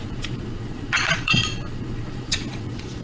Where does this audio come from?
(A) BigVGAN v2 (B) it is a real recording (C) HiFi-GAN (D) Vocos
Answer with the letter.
D